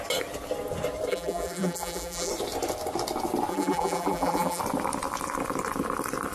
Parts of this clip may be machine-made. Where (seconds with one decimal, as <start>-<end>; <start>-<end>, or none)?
1.1-2.3; 3.5-4.6